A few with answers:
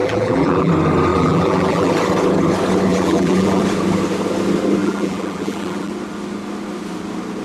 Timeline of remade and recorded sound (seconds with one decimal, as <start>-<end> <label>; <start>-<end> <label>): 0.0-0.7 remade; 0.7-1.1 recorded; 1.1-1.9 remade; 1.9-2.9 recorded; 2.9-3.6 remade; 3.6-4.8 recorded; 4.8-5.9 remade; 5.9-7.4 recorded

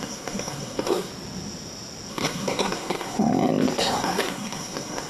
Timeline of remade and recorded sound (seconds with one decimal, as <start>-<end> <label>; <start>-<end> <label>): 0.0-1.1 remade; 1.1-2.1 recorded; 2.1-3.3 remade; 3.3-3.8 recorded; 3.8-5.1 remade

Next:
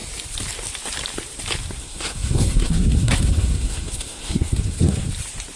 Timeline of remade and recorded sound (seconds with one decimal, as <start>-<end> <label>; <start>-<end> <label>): 0.0-1.8 recorded; 1.8-5.1 remade; 5.1-5.6 recorded

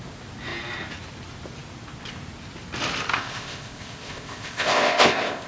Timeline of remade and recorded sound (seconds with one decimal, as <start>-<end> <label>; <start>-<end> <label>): 0.0-3.1 recorded; 3.1-5.5 remade